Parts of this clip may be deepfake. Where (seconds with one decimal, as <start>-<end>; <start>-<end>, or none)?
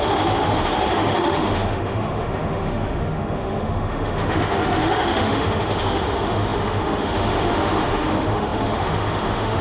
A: 0.0-9.6